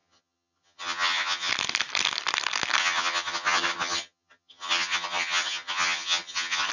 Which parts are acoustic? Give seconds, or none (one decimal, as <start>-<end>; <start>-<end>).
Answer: 1.5-2.8